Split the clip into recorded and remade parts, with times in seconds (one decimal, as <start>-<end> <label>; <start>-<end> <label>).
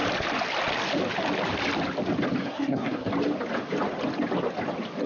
0.0-2.4 recorded; 2.4-3.1 remade; 3.1-5.1 recorded